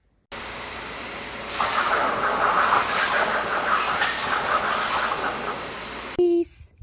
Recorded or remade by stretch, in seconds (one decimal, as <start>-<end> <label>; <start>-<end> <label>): 0.0-6.8 recorded